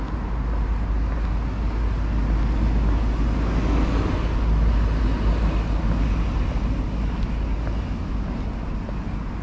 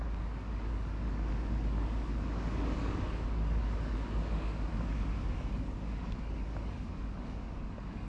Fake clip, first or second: second